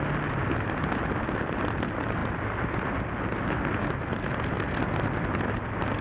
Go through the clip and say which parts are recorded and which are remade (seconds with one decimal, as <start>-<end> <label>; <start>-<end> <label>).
0.0-6.0 recorded